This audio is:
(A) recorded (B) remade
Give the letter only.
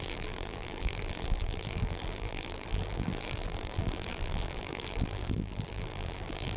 B